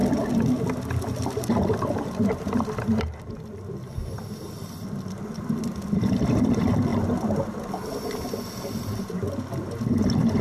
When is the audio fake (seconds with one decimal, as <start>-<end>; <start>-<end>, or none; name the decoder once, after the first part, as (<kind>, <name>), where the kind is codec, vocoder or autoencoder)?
none